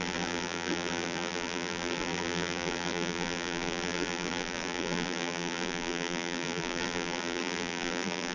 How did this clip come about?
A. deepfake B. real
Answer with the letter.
A